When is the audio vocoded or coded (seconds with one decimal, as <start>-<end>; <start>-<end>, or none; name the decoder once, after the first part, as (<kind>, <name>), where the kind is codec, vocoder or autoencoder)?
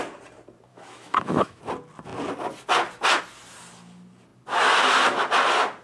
0.7-1.6 (autoencoder, DAC-VAE)